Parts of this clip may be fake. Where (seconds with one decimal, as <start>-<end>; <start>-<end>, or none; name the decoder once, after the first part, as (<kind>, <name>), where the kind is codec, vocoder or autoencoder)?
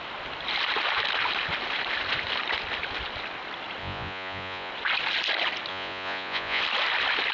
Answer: 3.8-4.7 (vocoder, Vocos); 5.7-6.6